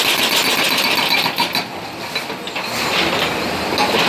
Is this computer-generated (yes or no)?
no